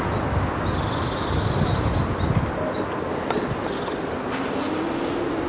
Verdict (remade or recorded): recorded